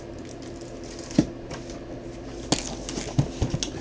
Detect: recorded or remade recorded